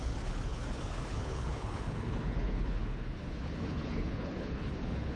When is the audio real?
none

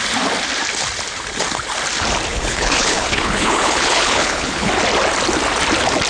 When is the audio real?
0.0-2.3; 4.7-6.1